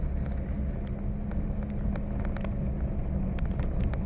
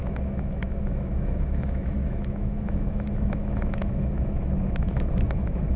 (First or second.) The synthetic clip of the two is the second